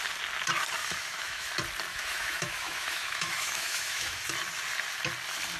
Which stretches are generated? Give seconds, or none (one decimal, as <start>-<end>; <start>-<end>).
0.8-1.5; 1.9-4.3